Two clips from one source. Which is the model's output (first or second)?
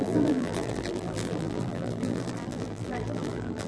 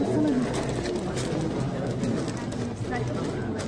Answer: first